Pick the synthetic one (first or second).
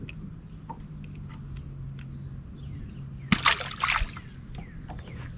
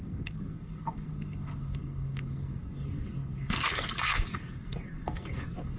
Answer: second